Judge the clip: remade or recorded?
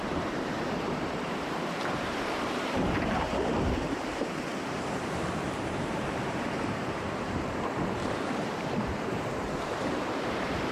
remade